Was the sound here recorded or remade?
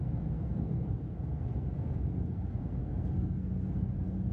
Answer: remade